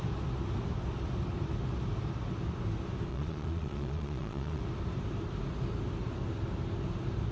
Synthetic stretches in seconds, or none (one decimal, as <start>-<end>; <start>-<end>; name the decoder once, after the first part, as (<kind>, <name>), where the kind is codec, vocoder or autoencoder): 3.1-4.6 (vocoder, Vocos)